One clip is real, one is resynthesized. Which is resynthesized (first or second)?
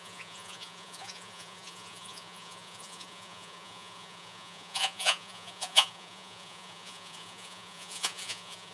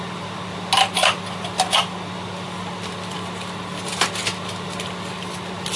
first